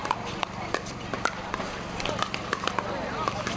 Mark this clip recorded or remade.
recorded